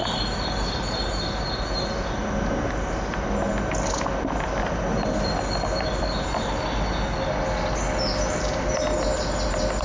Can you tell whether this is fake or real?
real